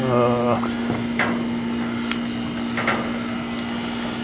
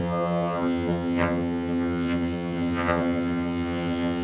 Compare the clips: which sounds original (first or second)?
first